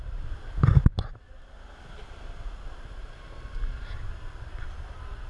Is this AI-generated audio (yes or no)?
no